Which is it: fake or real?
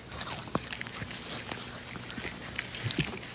real